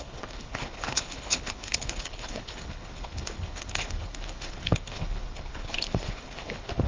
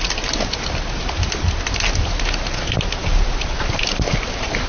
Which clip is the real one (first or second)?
second